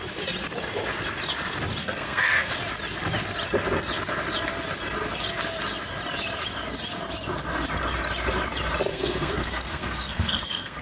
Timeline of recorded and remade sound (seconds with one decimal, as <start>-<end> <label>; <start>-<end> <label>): 0.0-1.8 recorded; 1.8-2.5 remade; 2.5-8.9 recorded; 8.9-10.8 remade